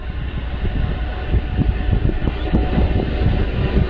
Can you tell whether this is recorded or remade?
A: recorded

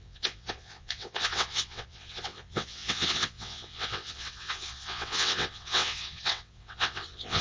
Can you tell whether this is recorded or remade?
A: remade